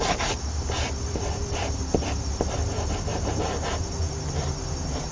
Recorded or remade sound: remade